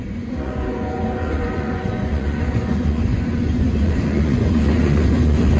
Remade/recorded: remade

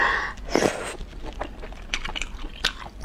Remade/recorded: recorded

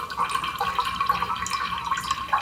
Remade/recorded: recorded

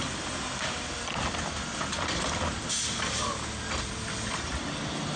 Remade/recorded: recorded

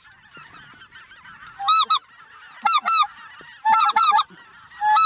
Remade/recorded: recorded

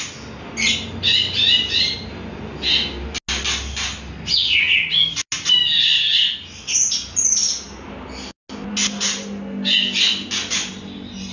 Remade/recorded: recorded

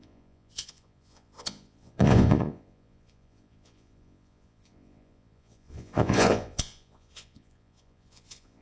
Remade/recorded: remade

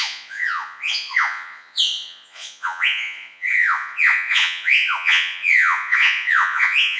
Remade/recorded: remade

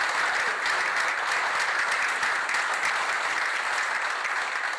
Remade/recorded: recorded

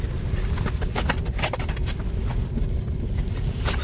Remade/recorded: recorded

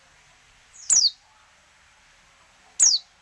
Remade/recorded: recorded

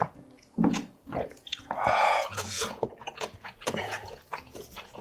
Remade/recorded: remade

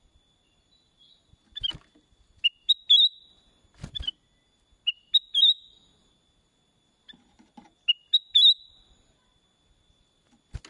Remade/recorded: recorded